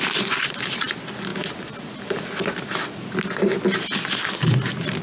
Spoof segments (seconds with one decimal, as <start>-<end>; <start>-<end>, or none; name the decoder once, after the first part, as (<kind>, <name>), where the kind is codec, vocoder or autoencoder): none